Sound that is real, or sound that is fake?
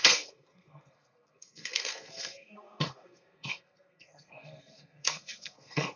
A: fake